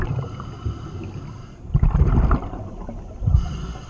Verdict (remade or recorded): recorded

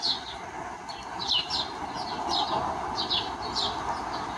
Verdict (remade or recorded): recorded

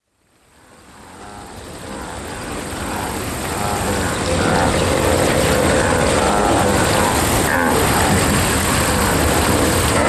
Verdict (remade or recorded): recorded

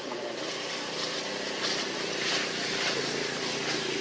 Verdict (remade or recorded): recorded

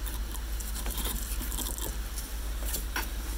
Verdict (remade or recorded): recorded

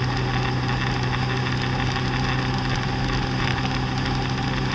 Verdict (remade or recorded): recorded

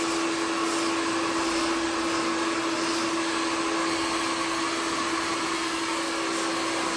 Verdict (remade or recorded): recorded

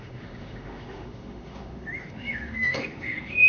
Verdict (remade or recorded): remade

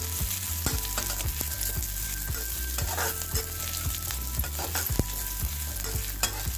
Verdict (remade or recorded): recorded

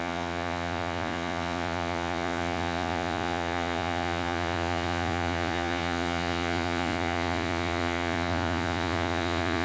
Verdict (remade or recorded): remade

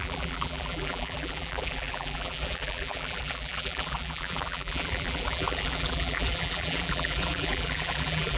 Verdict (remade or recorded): remade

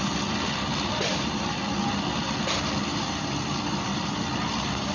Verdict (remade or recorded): recorded